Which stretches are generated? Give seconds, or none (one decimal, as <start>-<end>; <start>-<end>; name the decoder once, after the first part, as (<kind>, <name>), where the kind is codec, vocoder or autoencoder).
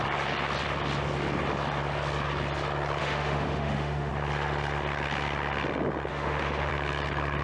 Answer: 3.0-4.1 (autoencoder, DAC-VAE); 6.1-6.7